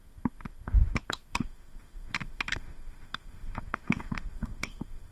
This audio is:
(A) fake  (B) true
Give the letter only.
A